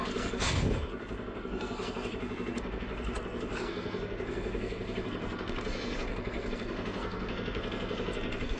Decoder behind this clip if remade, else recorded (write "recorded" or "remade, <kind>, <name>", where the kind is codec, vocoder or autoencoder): remade, codec, SNAC